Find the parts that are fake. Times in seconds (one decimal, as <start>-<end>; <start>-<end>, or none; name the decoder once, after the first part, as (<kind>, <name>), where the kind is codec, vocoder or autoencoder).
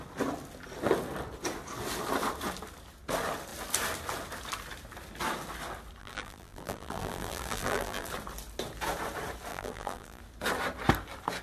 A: 6.0-8.1 (vocoder, BigVGAN v2); 9.5-10.2